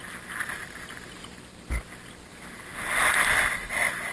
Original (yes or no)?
yes